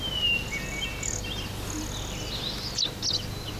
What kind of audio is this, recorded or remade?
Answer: recorded